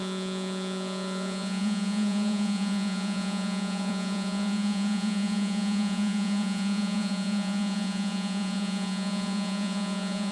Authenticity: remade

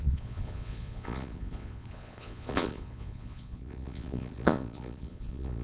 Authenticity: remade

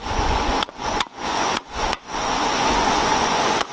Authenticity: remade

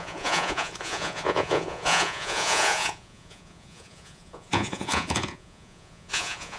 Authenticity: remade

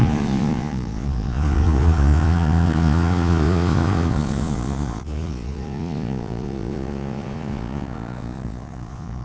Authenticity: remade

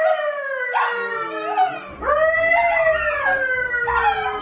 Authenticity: recorded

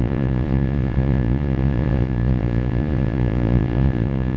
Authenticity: remade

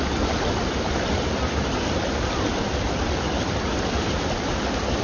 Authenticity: recorded